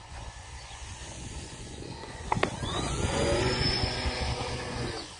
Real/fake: fake